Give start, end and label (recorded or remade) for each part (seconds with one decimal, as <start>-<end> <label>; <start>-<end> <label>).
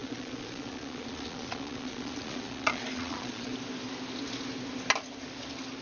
0.0-3.5 remade; 3.5-5.8 recorded